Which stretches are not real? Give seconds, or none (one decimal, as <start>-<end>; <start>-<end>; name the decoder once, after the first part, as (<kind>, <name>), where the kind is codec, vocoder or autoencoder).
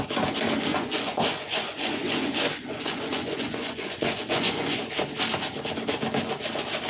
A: 0.7-4.8 (vocoder, Vocos)